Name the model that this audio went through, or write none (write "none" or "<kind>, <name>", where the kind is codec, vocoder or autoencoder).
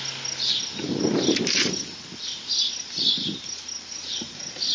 none